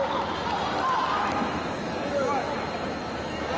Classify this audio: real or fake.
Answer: real